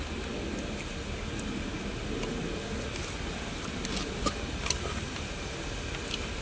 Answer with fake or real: real